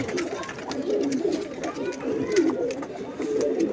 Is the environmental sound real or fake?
real